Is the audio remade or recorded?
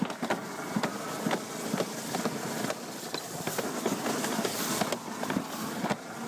recorded